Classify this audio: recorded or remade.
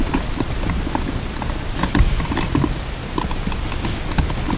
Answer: recorded